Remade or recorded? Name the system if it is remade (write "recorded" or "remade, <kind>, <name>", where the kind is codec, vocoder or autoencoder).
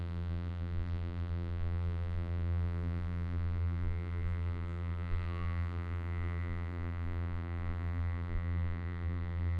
remade, vocoder, BigVGAN v2